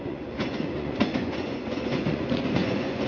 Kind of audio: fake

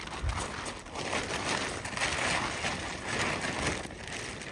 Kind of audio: real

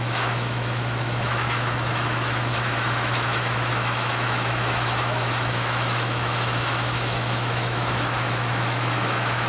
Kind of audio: fake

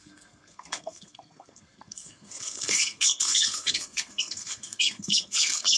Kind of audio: fake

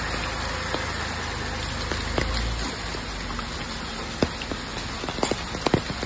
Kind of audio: real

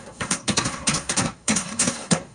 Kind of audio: fake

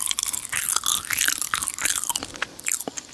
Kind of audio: real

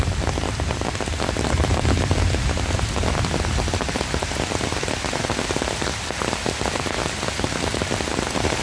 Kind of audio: real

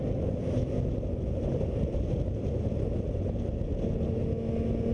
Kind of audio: real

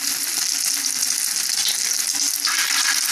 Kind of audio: real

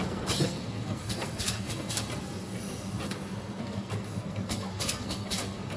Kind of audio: fake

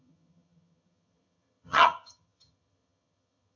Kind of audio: fake